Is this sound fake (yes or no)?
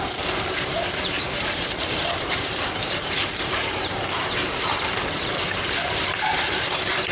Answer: yes